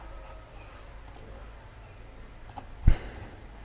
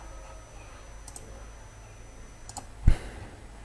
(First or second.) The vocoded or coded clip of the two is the first